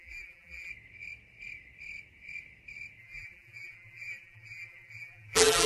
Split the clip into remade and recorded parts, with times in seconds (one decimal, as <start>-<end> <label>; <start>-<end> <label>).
0.0-0.7 remade; 0.7-3.0 recorded; 3.0-5.7 remade